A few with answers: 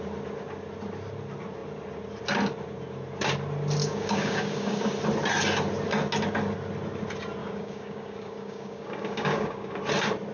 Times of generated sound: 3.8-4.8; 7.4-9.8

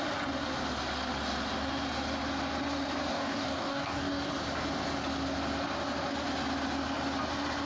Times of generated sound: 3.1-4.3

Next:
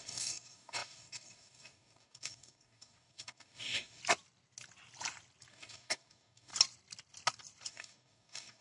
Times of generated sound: 0.0-4.0; 5.5-6.5; 7.7-8.6